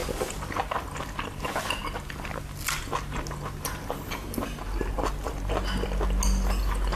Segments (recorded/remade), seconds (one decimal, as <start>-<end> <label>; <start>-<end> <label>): 0.0-7.0 recorded